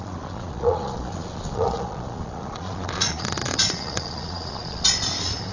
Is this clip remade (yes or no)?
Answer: yes